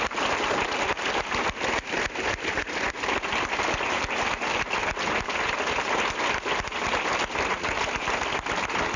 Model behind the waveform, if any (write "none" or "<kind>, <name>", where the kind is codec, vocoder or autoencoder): none